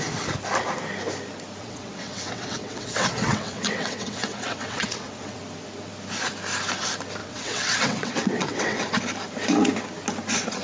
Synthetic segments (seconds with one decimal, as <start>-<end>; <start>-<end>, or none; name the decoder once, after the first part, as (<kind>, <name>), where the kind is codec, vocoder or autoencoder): 1.6-5.4 (vocoder, WaveNeXt); 7.2-8.8